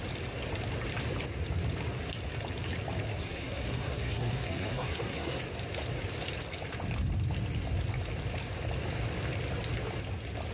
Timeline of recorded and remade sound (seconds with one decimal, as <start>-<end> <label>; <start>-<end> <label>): 0.0-3.1 recorded; 3.1-5.4 remade; 5.4-10.5 recorded